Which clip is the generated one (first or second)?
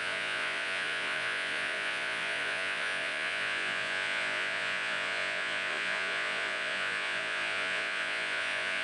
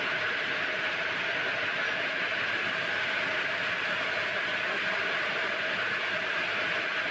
first